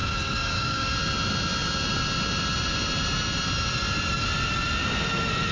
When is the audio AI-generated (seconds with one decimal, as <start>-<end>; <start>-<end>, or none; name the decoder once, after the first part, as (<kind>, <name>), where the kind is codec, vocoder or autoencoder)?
0.0-0.9 (codec, DAC)